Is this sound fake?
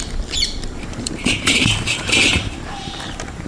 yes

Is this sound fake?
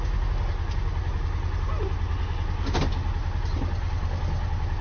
no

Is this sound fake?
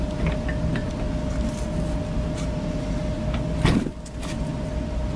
no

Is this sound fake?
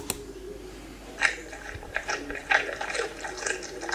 no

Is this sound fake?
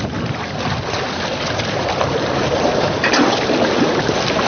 no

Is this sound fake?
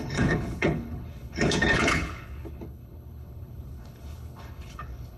yes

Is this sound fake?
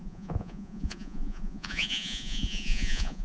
yes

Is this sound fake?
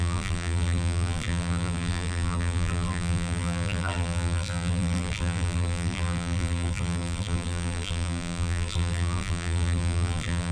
yes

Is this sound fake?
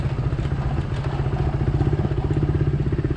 no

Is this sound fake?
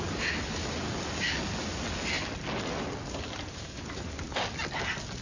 no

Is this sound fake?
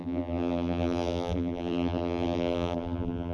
yes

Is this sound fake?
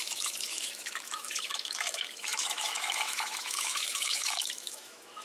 yes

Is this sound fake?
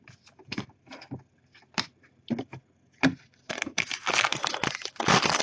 no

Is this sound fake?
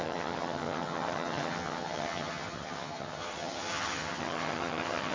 yes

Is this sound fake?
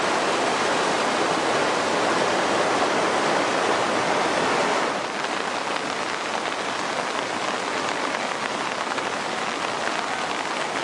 no